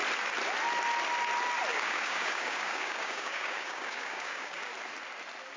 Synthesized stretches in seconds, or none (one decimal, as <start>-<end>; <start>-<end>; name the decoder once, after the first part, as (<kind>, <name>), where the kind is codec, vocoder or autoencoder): 1.7-4.7 (codec, DAC)